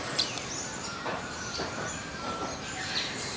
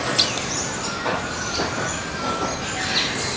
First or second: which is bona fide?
second